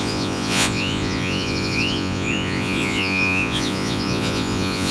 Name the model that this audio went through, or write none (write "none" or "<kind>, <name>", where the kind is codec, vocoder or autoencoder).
vocoder, Vocos